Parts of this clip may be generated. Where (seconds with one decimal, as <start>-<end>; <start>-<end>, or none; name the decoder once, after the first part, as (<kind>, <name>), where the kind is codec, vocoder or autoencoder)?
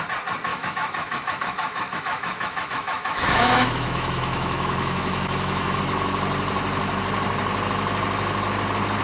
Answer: 0.5-5.8 (autoencoder, DAC-VAE)